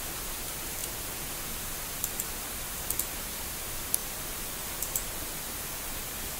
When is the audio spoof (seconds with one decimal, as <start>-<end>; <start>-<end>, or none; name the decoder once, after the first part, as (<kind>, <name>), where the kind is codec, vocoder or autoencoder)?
none